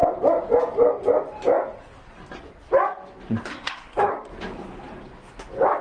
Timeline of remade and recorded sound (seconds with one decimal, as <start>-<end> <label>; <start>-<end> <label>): 0.0-3.5 recorded; 3.5-4.1 remade; 4.1-5.8 recorded